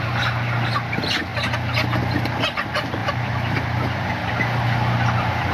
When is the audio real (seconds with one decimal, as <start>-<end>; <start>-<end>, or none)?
0.0-3.0; 4.3-5.5